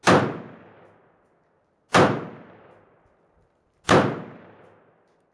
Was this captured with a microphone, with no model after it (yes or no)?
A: yes